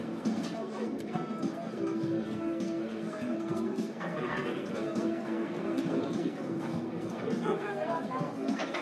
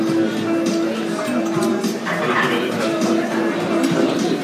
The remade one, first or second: first